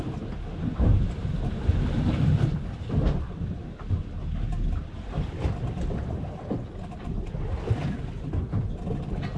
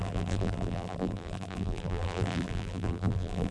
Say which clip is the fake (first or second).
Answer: second